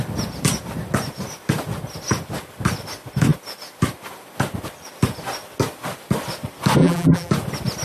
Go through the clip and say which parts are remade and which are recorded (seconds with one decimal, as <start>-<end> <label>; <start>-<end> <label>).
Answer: 0.0-6.8 recorded; 6.8-7.3 remade; 7.3-7.8 recorded